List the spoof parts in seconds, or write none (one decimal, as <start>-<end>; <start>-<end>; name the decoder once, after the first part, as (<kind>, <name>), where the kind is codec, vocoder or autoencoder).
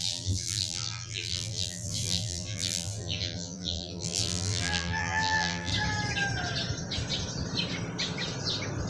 0.0-5.7 (vocoder, BigVGAN v2)